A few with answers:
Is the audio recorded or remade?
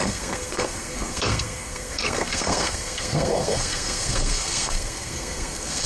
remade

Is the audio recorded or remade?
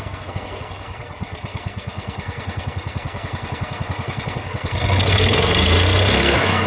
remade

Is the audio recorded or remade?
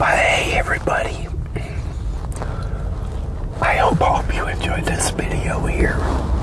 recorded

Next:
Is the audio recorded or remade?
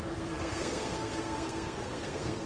remade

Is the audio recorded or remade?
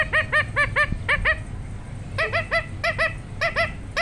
recorded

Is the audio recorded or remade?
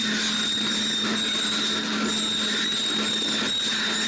recorded